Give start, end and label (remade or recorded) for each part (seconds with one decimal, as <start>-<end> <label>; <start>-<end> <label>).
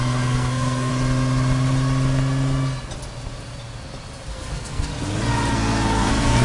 0.0-0.9 remade; 0.9-4.3 recorded; 4.3-4.9 remade; 4.9-5.5 recorded; 5.5-6.4 remade